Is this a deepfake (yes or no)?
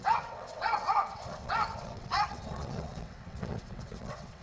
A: yes